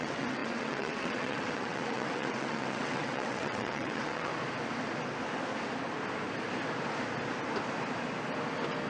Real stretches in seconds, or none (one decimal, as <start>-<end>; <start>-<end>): 4.3-8.9